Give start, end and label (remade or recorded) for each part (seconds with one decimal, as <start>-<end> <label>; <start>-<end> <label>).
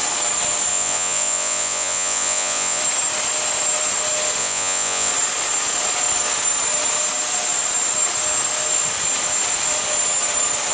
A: 0.0-0.7 recorded; 0.7-2.8 remade; 2.8-4.4 recorded; 4.4-5.1 remade; 5.1-10.7 recorded